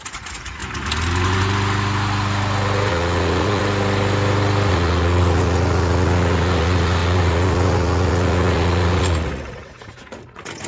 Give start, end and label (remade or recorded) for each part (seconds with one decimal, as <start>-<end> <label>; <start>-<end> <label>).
0.0-0.6 remade; 0.6-2.9 recorded; 2.9-3.6 remade; 3.6-4.7 recorded; 4.7-10.7 remade